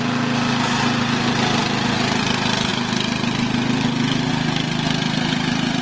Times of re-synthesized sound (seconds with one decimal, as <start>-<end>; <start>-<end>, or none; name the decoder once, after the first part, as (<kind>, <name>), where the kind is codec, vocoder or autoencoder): 1.6-2.2 (vocoder, BigVGAN v2)